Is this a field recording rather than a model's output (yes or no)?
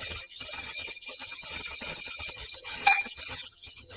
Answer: no